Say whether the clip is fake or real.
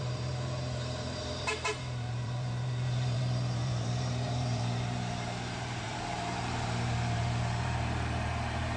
fake